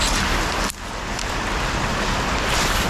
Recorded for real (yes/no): yes